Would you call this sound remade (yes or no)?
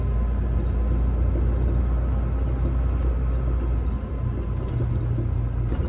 no